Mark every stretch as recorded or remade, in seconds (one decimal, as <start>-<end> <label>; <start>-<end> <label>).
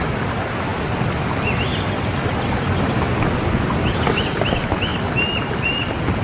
0.0-4.9 remade; 4.9-5.5 recorded; 5.5-6.2 remade